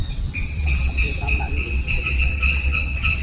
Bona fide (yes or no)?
no